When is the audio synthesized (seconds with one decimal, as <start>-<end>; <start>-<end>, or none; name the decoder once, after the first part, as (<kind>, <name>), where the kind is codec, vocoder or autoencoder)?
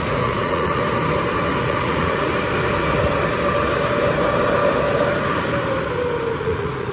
0.0-0.8 (vocoder, Vocos); 1.6-2.3; 6.4-6.9